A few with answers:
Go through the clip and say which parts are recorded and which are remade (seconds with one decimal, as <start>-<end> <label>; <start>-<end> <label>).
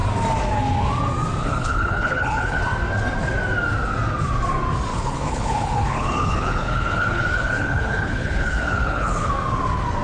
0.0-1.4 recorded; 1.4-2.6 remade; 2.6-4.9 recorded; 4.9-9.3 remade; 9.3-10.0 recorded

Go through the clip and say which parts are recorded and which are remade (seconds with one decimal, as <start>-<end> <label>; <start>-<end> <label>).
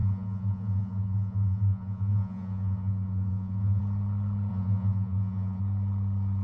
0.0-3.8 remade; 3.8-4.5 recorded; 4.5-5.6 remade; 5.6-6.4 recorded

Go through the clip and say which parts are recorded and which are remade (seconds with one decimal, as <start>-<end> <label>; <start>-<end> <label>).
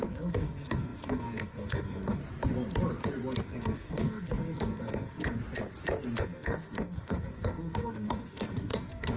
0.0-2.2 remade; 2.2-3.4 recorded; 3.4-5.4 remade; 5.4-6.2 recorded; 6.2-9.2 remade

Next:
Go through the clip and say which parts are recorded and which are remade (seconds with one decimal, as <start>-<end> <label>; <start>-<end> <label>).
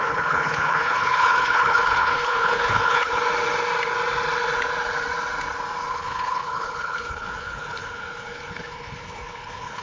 0.0-3.1 remade; 3.1-5.9 recorded; 5.9-9.8 remade